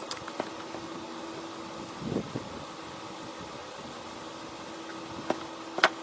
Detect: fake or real real